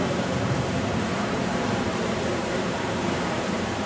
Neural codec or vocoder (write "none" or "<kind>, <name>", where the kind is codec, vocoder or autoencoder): vocoder, BigVGAN v2